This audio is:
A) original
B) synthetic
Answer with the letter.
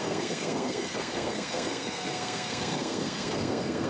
B